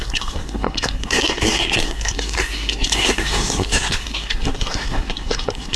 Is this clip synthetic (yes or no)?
yes